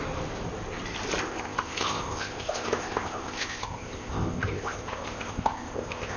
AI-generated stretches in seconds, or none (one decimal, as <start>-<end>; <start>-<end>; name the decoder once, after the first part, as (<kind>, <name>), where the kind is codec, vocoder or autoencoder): 1.2-6.2 (codec, ZipCodec)